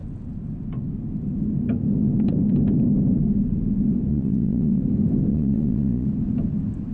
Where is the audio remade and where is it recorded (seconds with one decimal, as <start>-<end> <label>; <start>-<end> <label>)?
0.0-4.1 recorded; 4.1-4.8 remade; 4.8-5.3 recorded; 5.3-6.1 remade; 6.1-6.9 recorded